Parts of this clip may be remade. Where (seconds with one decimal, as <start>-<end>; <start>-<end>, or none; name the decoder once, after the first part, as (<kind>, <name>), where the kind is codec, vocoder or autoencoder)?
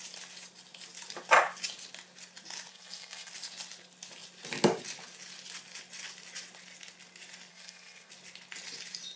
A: 2.7-3.3 (codec, SNAC); 7.5-8.1